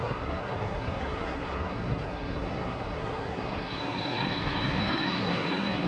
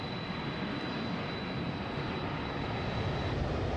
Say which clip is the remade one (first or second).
first